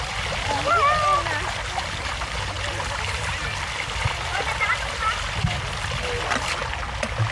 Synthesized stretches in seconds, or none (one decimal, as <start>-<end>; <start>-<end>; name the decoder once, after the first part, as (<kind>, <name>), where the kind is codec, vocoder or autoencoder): none